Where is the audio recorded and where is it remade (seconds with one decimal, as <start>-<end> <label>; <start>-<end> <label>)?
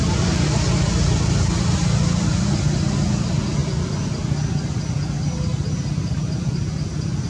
0.0-7.3 recorded